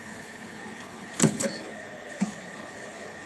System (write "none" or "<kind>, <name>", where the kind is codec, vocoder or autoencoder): codec, HILCodec